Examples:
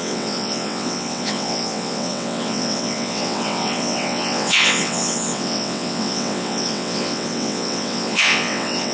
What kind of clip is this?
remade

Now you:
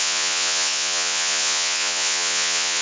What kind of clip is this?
remade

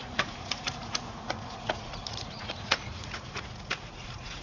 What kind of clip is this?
remade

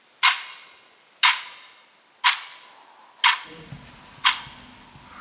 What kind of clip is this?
recorded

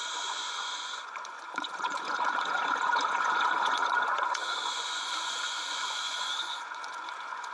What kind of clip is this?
remade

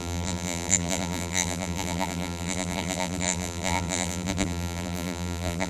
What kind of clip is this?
remade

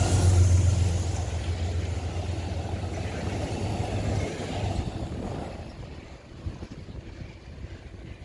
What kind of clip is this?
recorded